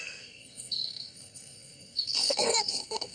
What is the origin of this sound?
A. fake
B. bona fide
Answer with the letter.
A